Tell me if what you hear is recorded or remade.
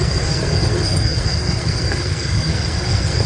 remade